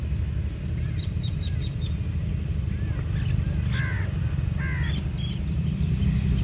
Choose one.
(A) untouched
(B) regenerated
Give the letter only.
A